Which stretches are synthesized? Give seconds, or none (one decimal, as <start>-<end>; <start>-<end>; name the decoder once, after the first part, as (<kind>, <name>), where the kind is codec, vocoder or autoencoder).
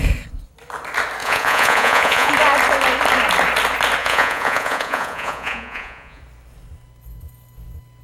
1.2-2.3 (vocoder, Vocos); 4.0-6.2